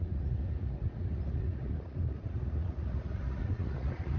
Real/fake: fake